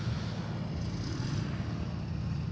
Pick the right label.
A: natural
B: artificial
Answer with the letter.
A